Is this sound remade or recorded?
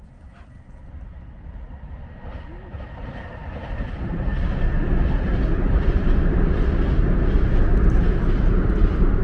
recorded